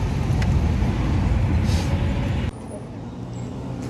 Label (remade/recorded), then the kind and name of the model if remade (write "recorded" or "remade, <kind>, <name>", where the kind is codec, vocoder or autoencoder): recorded